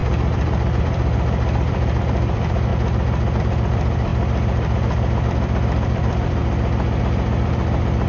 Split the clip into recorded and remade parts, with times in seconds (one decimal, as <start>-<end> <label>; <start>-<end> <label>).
0.0-2.7 remade; 2.7-3.4 recorded; 3.4-4.1 remade; 4.1-5.3 recorded; 5.3-6.4 remade; 6.4-7.0 recorded; 7.0-8.1 remade